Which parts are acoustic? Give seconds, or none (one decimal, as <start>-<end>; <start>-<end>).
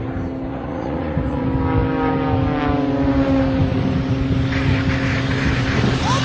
0.0-0.5; 1.4-6.2